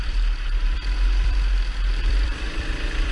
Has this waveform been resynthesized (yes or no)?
yes